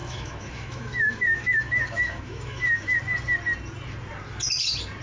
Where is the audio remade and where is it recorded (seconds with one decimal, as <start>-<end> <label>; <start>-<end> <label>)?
0.0-3.0 remade; 3.0-5.0 recorded